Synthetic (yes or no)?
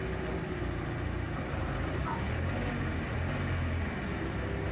no